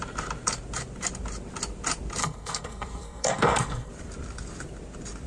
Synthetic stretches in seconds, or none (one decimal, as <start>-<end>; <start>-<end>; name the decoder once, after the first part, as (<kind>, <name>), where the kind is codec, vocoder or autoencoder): 2.2-3.9 (codec, SNAC)